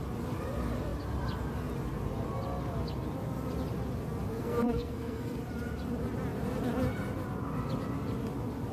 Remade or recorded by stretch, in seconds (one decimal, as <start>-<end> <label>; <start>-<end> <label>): 0.0-4.3 recorded; 4.3-5.4 remade; 5.4-8.7 recorded